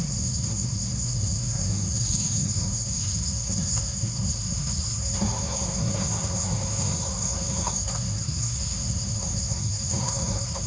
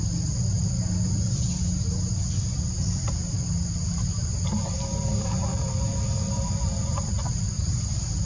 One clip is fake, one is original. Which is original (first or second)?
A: second